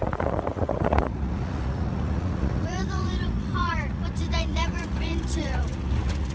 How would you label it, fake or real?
fake